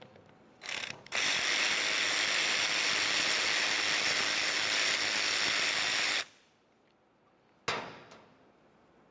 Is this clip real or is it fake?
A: real